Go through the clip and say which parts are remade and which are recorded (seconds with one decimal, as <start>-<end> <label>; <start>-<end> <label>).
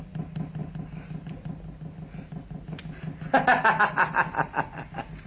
0.0-5.3 recorded